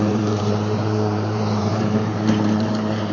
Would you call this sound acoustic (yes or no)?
no